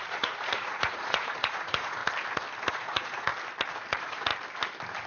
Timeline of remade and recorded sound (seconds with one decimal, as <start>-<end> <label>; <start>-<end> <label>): 0.0-2.0 remade; 2.0-2.7 recorded; 2.7-3.3 remade; 3.3-3.9 recorded; 3.9-4.3 remade; 4.3-5.1 recorded